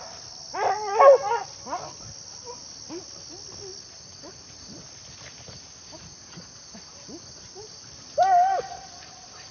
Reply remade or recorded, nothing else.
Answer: recorded